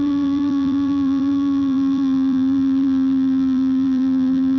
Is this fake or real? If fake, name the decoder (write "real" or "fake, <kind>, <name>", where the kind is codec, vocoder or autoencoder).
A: fake, vocoder, BigVGAN v2